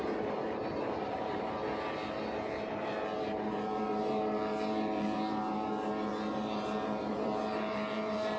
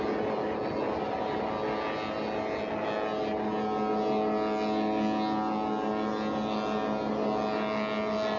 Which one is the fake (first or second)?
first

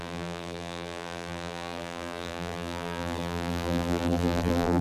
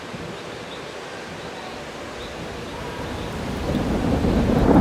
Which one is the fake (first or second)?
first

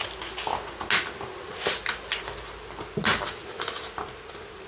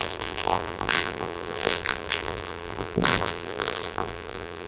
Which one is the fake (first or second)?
second